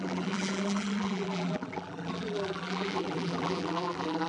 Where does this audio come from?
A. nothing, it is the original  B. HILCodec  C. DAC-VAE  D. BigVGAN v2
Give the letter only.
D